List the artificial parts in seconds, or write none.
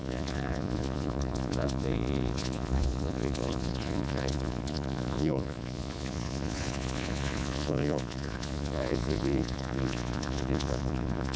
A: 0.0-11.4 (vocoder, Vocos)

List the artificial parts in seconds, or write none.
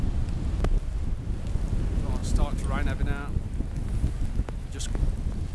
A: none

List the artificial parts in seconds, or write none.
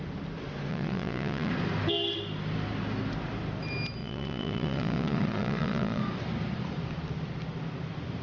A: 0.7-1.5 (vocoder, Vocos); 4.0-6.0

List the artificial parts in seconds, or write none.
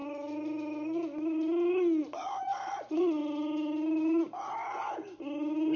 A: 2.0-3.2 (vocoder, Vocos)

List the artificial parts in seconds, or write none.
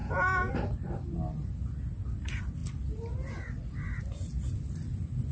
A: 0.0-0.5 (vocoder, Vocos)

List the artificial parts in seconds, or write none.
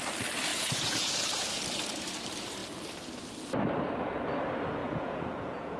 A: 0.5-1.6 (vocoder, Vocos); 4.8-5.8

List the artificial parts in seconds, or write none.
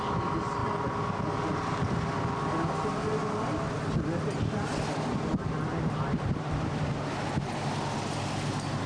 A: none